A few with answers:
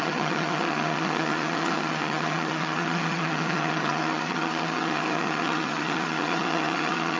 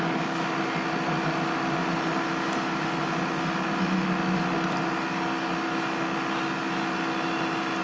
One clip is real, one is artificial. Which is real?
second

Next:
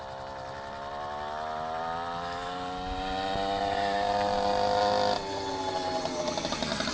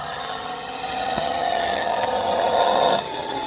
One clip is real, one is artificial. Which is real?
first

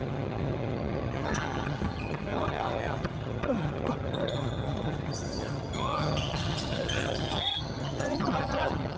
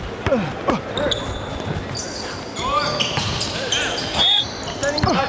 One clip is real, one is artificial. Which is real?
second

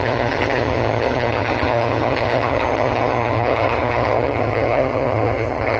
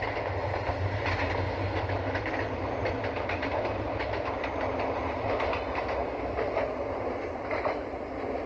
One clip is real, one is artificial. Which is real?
second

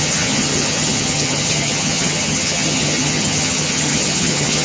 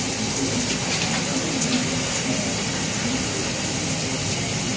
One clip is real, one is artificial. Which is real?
second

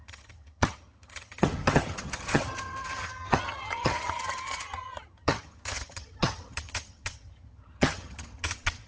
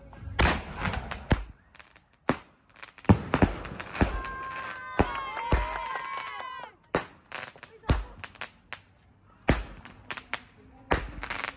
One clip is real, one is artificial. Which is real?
second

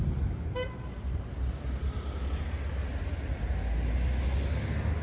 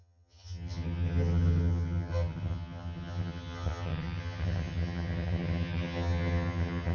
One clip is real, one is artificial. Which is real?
first